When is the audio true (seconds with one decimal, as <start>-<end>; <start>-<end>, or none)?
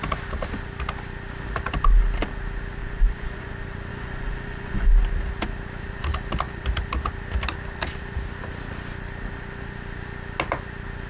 0.0-2.8; 3.5-3.9; 4.9-11.1